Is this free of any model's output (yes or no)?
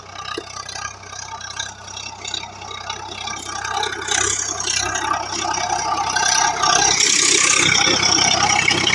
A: yes